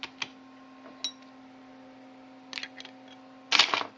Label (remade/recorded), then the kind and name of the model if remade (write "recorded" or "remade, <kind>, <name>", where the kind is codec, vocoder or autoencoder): recorded